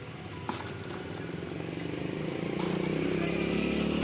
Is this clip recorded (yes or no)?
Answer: yes